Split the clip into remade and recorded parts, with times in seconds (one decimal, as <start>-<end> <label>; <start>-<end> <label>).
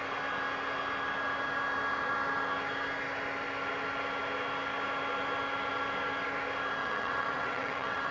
0.0-6.8 recorded; 6.8-8.1 remade